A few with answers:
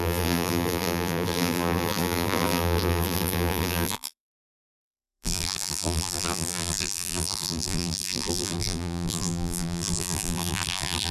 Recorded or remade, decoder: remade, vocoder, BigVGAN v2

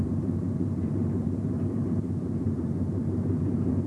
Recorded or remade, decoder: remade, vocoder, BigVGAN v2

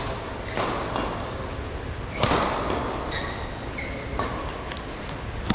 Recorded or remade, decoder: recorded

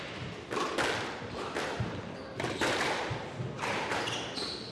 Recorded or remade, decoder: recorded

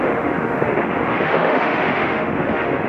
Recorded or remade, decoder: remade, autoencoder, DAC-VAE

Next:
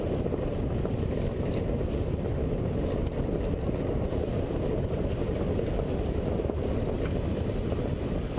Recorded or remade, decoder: recorded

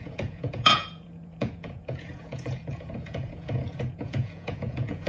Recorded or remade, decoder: remade, vocoder, Vocos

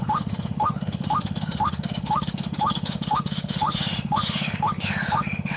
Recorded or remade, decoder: remade, autoencoder, DAC-VAE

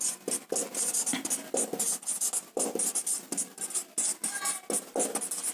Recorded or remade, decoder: recorded